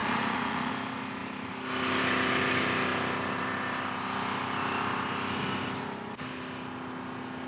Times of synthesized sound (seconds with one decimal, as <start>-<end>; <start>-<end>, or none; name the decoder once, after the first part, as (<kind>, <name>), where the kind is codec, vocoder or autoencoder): 0.0-0.7 (vocoder, Vocos)